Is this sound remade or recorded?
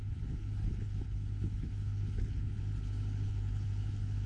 remade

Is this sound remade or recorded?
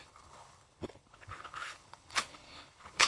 remade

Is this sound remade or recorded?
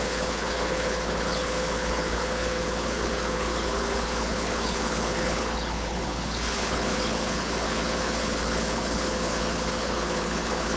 remade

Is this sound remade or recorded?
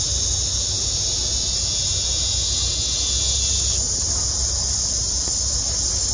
recorded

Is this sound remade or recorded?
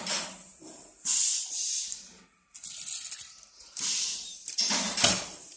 recorded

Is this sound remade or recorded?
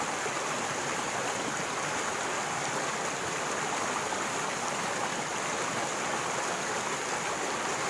recorded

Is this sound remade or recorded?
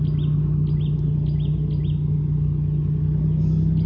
recorded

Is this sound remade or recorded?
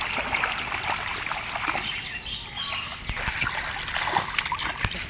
recorded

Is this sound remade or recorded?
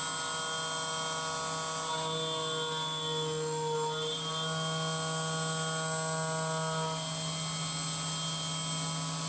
recorded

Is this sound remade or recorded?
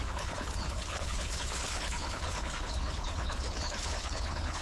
remade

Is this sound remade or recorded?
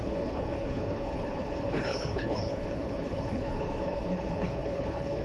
remade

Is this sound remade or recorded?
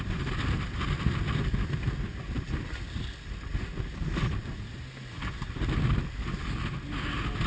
recorded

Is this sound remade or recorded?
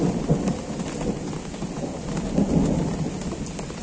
recorded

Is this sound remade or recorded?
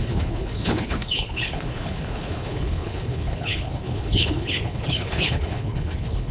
remade